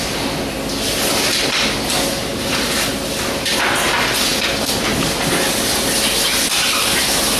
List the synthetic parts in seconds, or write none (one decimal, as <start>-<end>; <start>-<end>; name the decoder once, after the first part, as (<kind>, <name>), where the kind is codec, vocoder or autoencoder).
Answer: none